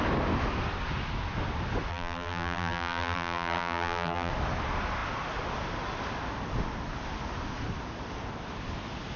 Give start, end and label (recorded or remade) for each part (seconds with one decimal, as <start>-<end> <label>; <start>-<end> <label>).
0.0-1.9 recorded; 1.9-4.3 remade; 4.3-9.2 recorded